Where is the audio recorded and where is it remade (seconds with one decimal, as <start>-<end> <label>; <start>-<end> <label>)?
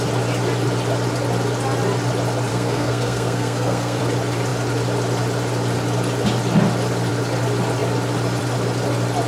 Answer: 0.0-2.5 recorded; 2.5-4.0 remade; 4.0-9.3 recorded